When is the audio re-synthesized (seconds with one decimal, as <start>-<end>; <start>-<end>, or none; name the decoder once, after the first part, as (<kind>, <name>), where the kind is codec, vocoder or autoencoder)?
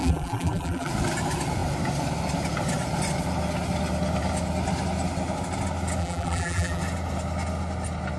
0.0-0.9 (vocoder, BigVGAN v2); 6.0-6.8